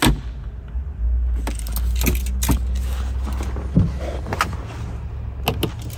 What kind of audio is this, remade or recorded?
recorded